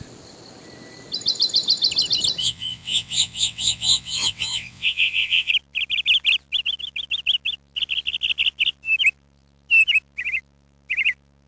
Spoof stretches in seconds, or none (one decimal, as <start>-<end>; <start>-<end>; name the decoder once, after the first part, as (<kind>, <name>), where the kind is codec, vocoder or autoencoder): 2.4-5.5 (vocoder, WaveNeXt)